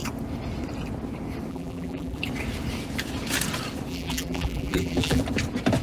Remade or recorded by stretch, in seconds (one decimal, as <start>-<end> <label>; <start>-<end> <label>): 0.0-1.5 recorded; 1.5-2.2 remade; 2.2-3.9 recorded; 3.9-5.2 remade; 5.2-5.8 recorded